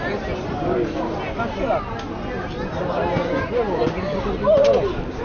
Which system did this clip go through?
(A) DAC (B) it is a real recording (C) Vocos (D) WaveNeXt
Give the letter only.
B